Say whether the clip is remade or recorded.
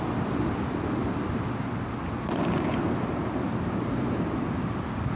recorded